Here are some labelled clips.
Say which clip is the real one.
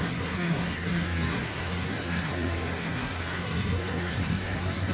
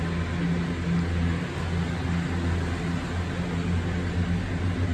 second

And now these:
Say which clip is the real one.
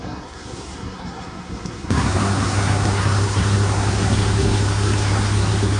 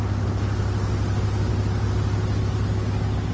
second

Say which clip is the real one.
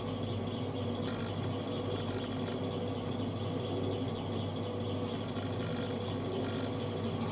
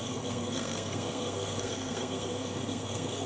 first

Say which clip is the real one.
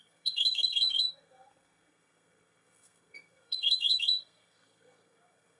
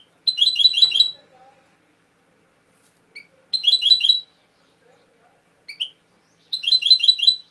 second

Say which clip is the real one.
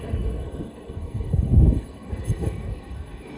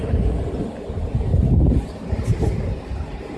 second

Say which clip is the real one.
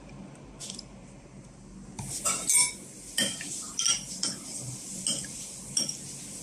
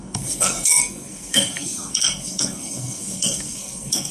first